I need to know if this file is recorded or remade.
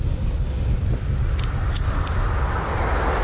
recorded